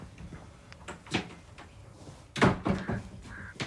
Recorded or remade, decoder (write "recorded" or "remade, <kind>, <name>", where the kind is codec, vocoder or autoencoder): recorded